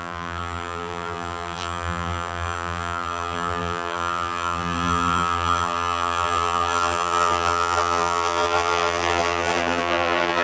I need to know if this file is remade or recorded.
remade